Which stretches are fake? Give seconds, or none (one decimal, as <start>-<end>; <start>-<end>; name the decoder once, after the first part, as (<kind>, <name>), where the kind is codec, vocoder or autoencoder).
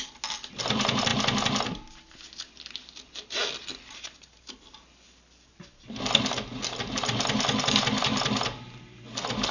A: none